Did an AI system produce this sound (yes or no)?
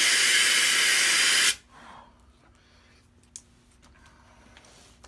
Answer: no